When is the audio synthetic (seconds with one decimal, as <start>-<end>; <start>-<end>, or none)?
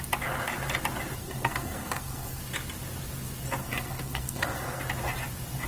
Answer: 1.2-2.4; 3.6-4.8